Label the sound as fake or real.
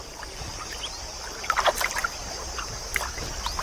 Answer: real